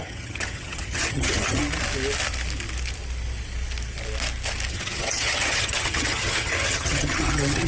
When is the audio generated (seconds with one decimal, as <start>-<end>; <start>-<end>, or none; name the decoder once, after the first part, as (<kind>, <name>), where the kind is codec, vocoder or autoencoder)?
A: 0.0-1.6 (vocoder, HiFi-GAN); 4.7-7.7